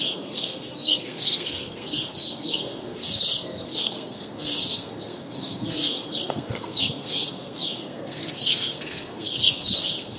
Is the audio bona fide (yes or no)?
no